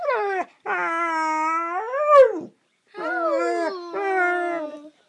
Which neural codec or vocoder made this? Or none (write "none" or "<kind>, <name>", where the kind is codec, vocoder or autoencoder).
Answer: none